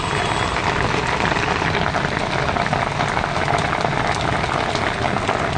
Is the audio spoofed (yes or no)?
no